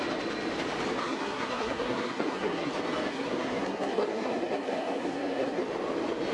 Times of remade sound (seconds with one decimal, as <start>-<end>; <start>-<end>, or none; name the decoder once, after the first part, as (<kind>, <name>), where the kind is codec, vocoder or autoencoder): 1.0-2.7 (codec, SNAC); 3.1-5.6